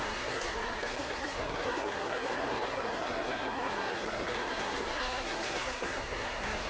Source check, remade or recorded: remade